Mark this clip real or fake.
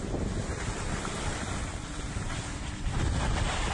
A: fake